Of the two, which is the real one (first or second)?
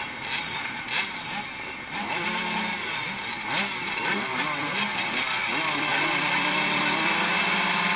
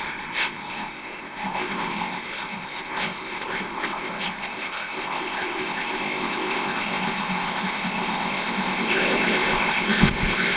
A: first